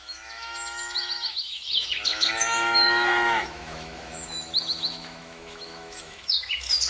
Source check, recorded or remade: remade